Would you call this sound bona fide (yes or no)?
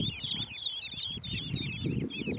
yes